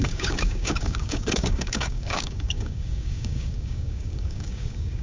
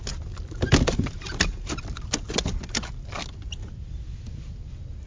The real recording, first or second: second